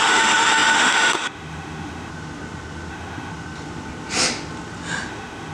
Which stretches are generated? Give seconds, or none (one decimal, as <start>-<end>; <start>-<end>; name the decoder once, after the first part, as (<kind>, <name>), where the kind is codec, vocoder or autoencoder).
0.0-2.1 (autoencoder, DAC-VAE); 2.9-3.3; 5.1-5.5